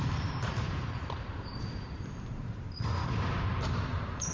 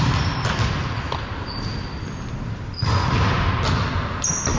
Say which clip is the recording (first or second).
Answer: second